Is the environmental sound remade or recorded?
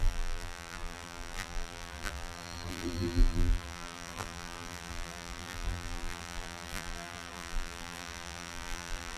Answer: remade